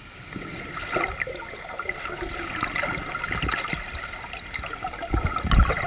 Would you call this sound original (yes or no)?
yes